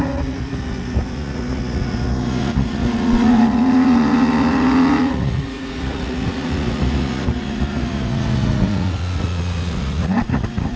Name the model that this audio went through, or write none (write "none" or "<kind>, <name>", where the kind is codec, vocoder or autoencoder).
vocoder, Vocos